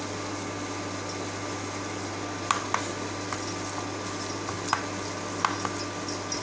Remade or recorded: recorded